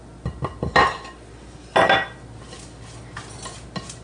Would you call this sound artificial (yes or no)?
no